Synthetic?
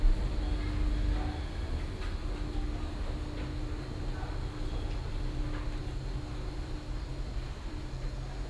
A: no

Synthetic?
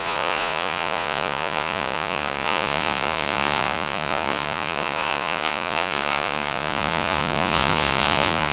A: yes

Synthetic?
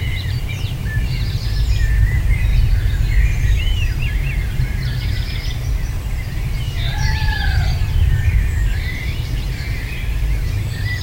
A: yes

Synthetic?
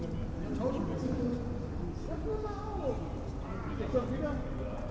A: no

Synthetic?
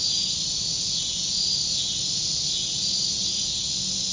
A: no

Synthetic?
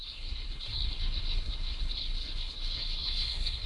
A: yes